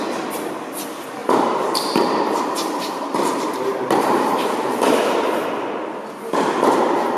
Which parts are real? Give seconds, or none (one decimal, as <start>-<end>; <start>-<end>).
0.0-1.2; 5.5-7.2